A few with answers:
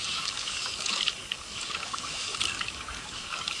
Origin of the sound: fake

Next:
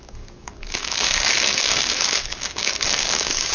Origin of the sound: fake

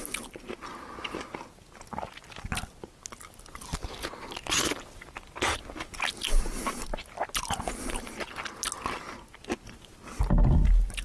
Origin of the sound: real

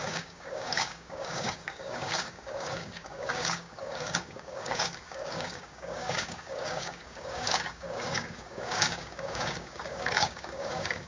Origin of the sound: fake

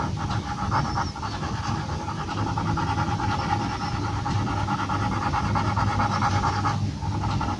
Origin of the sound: real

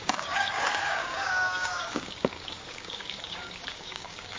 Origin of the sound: fake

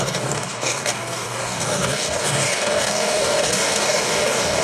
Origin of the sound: fake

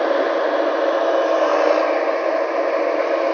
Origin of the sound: real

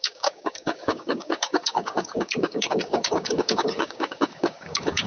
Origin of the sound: fake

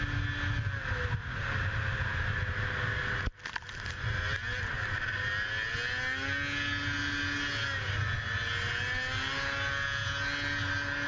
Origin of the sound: real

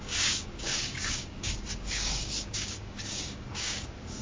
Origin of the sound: fake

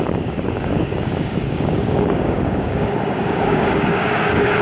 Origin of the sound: fake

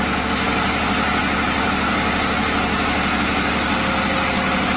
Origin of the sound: real